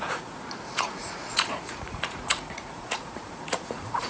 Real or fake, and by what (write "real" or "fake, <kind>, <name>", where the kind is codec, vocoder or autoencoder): fake, vocoder, Vocos